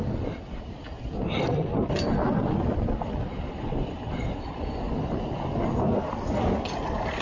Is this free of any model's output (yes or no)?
yes